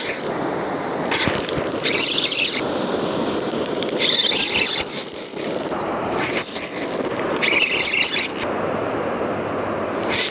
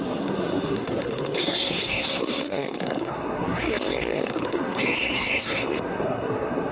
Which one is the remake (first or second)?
second